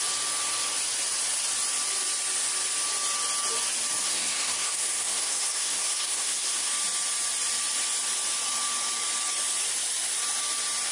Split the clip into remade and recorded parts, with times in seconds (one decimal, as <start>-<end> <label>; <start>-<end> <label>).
0.0-4.0 recorded; 4.0-6.7 remade; 6.7-10.9 recorded